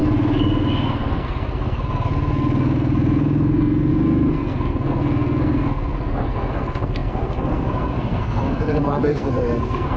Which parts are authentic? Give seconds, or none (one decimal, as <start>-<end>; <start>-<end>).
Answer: none